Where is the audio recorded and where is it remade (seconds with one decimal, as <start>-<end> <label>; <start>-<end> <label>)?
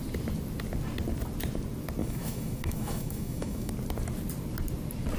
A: 0.0-2.0 recorded; 2.0-3.7 remade; 3.7-5.2 recorded